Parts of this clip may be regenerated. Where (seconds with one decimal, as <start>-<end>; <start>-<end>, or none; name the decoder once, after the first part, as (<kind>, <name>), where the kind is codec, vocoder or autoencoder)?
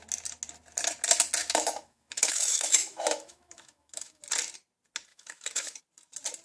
1.4-4.2 (autoencoder, DAC-VAE); 5.1-5.8